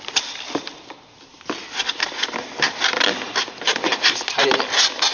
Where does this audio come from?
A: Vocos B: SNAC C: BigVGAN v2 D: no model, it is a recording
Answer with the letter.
D